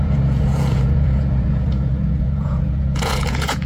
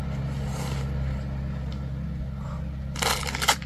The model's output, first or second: first